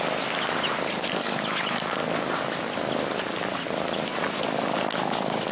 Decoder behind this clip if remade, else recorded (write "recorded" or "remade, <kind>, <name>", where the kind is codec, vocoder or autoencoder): recorded